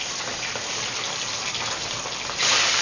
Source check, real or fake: real